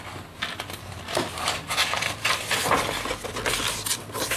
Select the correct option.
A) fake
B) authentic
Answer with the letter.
B